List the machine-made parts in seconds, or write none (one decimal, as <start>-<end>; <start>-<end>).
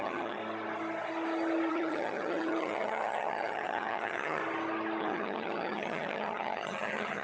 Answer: 0.0-0.4; 1.7-4.4; 5.0-7.2